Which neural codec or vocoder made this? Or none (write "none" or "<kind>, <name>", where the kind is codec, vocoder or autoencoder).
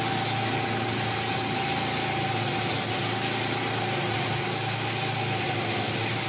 none